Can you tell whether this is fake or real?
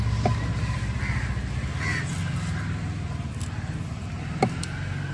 real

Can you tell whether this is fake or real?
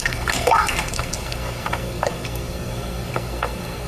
fake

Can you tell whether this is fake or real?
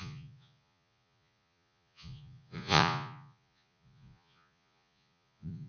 fake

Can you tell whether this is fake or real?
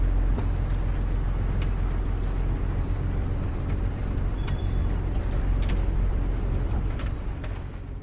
fake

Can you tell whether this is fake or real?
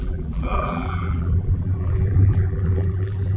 fake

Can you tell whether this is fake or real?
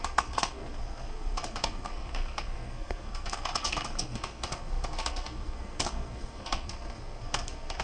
fake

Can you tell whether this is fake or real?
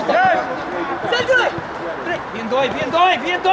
real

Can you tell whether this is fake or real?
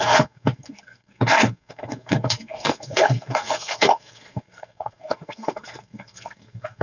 fake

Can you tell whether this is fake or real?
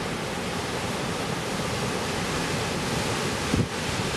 real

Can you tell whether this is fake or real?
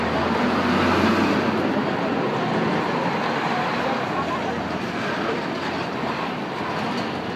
real